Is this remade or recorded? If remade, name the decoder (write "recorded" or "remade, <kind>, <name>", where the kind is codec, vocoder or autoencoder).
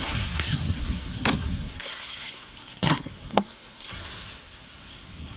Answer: remade, codec, SNAC